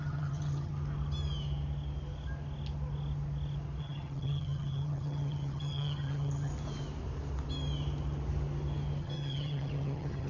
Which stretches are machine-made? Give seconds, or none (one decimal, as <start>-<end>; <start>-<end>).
0.0-0.7; 3.8-6.5; 9.0-10.3